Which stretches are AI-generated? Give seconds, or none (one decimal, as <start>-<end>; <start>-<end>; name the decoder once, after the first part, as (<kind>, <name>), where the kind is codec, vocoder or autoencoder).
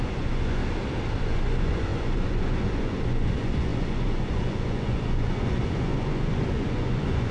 0.0-0.6 (vocoder, Vocos); 1.2-7.3